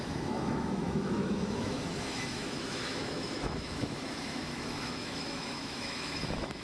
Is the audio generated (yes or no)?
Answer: yes